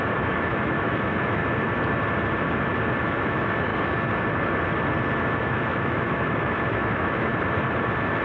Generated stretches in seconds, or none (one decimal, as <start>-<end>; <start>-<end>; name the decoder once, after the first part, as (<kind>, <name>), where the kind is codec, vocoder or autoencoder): 0.0-1.4 (autoencoder, DAC-VAE); 3.0-3.7; 5.3-7.3